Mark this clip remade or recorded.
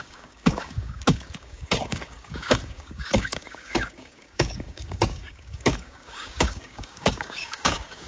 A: remade